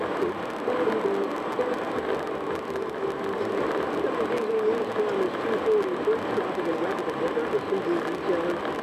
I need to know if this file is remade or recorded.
recorded